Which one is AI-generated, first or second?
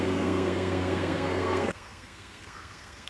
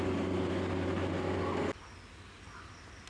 first